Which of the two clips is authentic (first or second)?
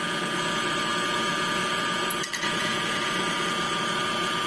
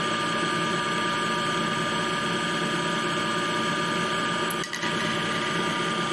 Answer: second